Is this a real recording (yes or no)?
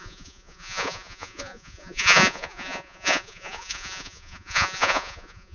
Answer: no